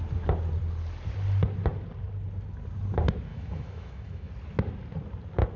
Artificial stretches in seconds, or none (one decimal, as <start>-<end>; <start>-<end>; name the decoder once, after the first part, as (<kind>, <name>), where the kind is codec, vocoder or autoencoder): 3.3-4.3 (autoencoder, DAC-VAE)